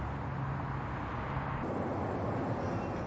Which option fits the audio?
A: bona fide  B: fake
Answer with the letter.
A